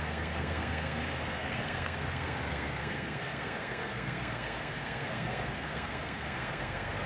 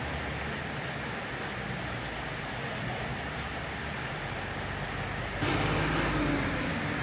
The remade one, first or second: first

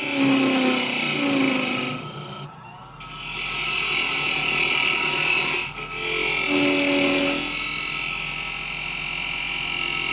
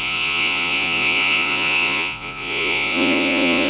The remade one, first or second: second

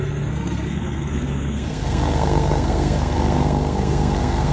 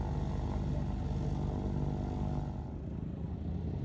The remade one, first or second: first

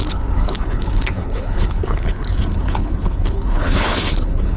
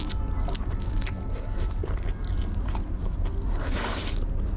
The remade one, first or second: first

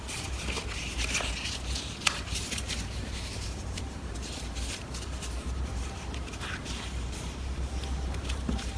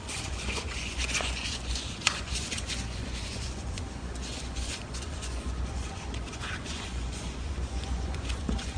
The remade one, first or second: second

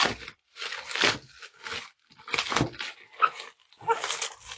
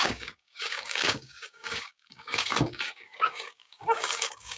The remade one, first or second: second